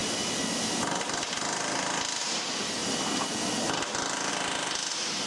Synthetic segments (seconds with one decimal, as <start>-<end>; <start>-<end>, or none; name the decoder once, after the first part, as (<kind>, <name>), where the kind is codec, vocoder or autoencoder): none